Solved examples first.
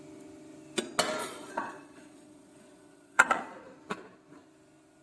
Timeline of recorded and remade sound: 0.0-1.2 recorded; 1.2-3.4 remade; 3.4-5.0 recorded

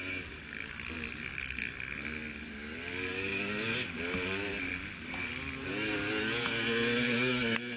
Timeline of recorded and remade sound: 0.0-7.8 recorded

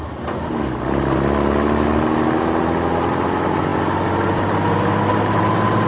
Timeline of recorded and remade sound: 0.0-5.9 recorded

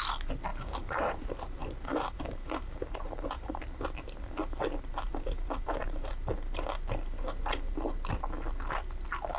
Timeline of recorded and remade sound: 0.0-0.5 recorded; 0.5-1.0 remade; 1.0-1.6 recorded; 1.6-3.6 remade; 3.6-4.9 recorded; 4.9-6.1 remade; 6.1-9.4 recorded

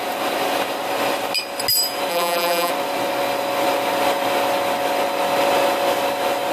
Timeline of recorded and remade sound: 0.0-2.1 recorded; 2.1-2.7 remade; 2.7-6.5 recorded

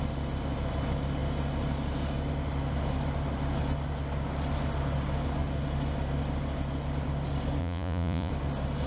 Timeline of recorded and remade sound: 0.0-7.6 recorded; 7.6-8.3 remade; 8.3-8.9 recorded

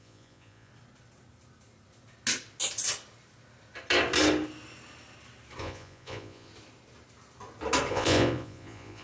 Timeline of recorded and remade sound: 0.0-0.7 remade; 0.7-5.6 recorded; 5.6-6.5 remade; 6.5-7.9 recorded; 7.9-9.0 remade